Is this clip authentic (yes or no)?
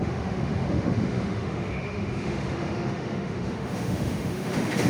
no